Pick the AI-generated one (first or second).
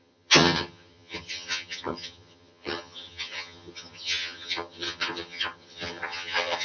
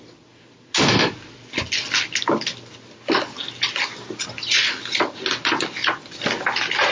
first